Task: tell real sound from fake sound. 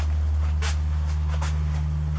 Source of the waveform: real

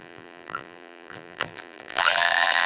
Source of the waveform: fake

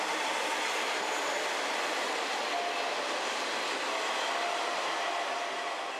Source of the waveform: real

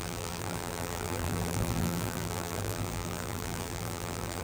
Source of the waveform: fake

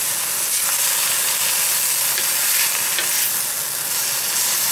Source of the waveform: real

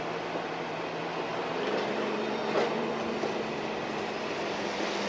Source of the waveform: fake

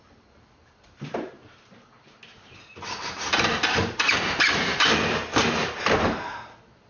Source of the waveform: fake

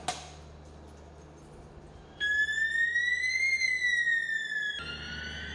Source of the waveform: real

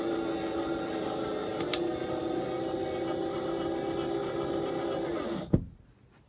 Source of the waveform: real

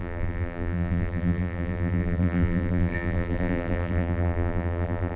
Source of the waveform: fake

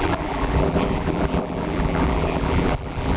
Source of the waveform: fake